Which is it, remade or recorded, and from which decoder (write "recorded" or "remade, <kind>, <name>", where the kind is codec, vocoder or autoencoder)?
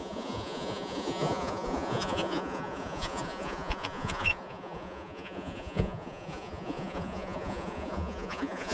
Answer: remade, vocoder, Vocos